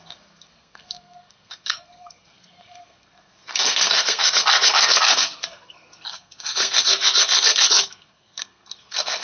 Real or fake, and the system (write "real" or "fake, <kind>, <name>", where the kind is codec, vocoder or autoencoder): fake, codec, SNAC